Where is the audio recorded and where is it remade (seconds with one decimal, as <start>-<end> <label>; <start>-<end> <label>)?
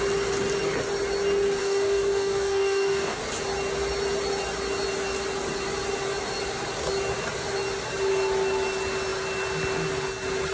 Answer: 0.0-1.6 recorded; 1.6-3.2 remade; 3.2-10.5 recorded